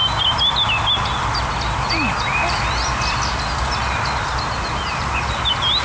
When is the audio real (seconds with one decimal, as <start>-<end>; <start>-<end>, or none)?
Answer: 0.0-5.8